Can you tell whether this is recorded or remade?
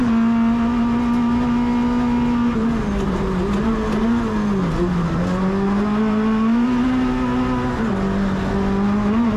recorded